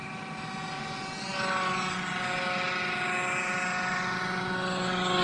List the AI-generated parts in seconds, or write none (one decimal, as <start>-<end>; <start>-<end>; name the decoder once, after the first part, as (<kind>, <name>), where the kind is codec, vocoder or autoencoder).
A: none